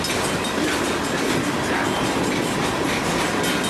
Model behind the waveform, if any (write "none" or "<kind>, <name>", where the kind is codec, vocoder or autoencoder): none